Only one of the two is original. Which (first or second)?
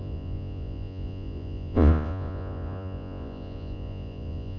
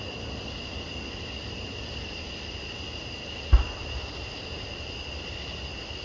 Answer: second